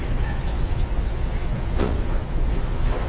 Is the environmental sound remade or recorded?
remade